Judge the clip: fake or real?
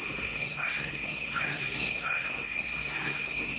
fake